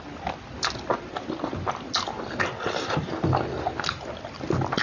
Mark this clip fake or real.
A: real